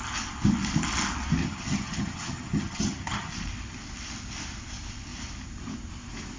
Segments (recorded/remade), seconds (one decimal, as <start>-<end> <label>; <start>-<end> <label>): 0.0-1.4 recorded; 1.4-3.3 remade; 3.3-6.4 recorded